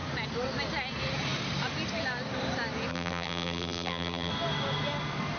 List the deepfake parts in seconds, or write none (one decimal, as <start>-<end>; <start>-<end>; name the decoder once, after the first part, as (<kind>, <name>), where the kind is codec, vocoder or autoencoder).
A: 2.9-4.3 (vocoder, BigVGAN v2)